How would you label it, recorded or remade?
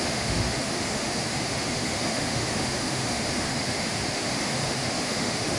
remade